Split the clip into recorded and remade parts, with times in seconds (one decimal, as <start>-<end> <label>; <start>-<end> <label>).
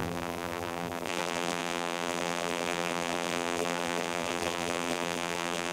0.0-5.7 remade